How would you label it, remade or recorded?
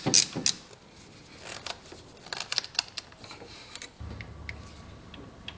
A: recorded